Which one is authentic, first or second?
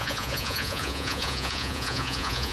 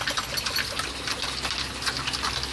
second